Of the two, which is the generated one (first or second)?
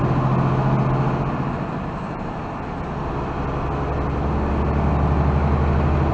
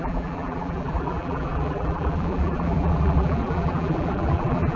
second